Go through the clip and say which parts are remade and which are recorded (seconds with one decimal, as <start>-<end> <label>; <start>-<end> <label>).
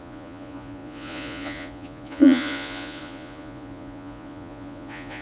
0.0-5.2 remade